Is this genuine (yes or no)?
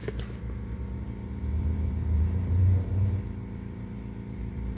no